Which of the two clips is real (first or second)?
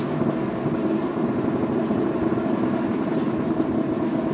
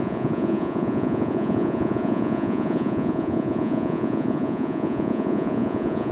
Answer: first